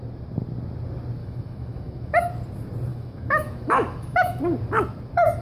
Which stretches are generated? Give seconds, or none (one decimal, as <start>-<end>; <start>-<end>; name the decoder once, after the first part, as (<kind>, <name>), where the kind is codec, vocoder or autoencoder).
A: 1.2-2.1 (autoencoder, DAC-VAE); 2.9-4.4